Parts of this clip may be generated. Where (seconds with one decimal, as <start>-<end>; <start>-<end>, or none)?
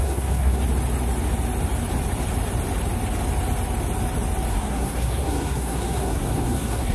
0.0-0.6; 4.5-6.9